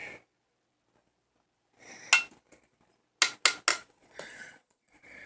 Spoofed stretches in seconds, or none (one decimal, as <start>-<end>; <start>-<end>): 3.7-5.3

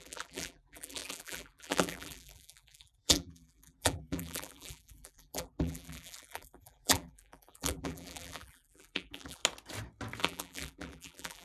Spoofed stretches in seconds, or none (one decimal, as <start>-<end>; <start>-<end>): 0.0-9.4; 10.2-11.4

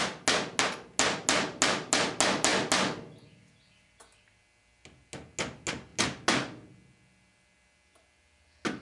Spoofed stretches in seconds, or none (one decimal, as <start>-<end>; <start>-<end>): none